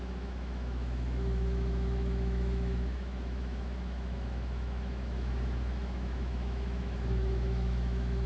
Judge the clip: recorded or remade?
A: remade